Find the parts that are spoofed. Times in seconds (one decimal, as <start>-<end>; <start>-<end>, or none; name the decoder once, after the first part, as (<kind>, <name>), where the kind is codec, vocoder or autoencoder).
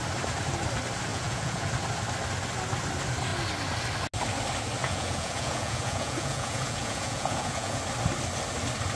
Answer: 1.1-1.7 (vocoder, Vocos); 4.8-7.8